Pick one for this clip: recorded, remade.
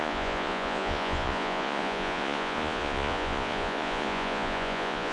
remade